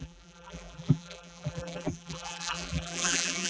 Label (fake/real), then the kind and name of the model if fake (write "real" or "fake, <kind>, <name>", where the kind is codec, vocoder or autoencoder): fake, vocoder, BigVGAN v2